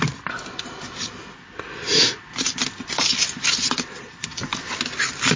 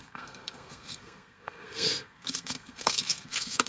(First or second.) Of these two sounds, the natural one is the first